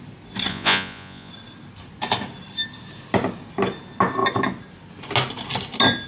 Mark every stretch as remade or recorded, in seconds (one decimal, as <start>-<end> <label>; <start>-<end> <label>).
0.0-0.5 recorded; 0.5-1.3 remade; 1.3-6.1 recorded